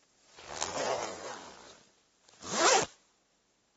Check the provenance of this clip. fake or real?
real